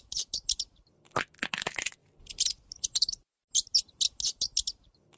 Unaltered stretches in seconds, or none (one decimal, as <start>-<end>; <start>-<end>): 0.0-5.2